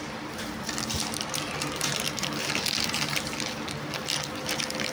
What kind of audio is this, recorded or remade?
recorded